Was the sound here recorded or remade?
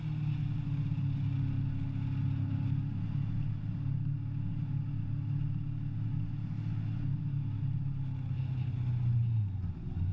recorded